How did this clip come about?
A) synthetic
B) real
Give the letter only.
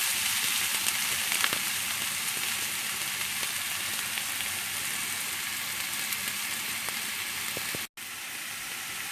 B